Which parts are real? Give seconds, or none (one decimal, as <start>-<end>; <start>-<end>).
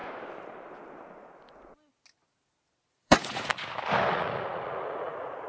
0.0-2.9; 3.5-4.1